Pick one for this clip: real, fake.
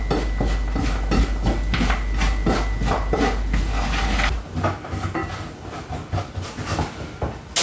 real